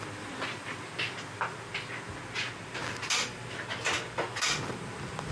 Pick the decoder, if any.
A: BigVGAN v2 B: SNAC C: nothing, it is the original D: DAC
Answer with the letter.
C